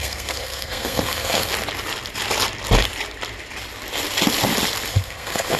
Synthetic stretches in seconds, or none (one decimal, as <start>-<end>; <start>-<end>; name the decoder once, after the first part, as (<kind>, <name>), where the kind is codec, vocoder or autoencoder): 0.0-1.5 (codec, SNAC); 4.9-5.6